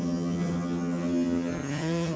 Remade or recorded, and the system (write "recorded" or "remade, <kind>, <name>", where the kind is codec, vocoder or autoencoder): remade, vocoder, HiFi-GAN